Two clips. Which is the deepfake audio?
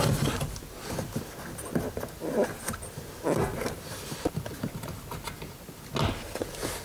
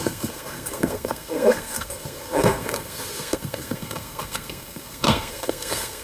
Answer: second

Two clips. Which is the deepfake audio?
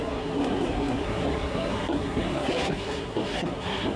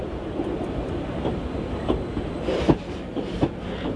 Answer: first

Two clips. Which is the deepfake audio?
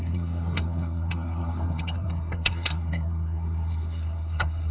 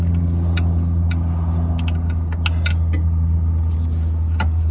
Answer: first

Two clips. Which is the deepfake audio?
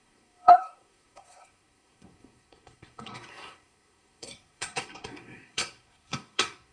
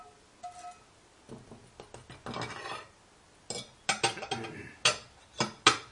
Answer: first